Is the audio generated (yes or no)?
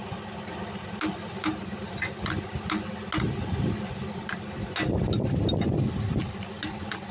no